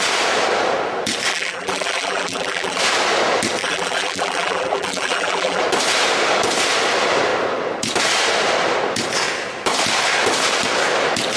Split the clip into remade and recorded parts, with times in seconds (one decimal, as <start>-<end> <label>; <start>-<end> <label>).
0.0-1.3 recorded; 1.3-2.8 remade; 2.8-3.6 recorded; 3.6-5.6 remade; 5.6-11.4 recorded